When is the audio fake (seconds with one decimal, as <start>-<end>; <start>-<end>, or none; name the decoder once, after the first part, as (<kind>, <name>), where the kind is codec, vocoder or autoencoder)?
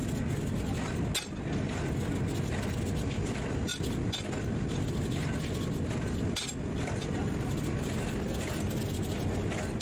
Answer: none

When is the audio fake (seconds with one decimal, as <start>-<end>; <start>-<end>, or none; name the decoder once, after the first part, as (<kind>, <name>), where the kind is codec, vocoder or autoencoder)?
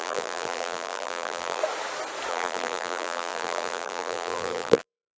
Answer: 0.0-1.6 (vocoder, BigVGAN v2); 2.3-5.2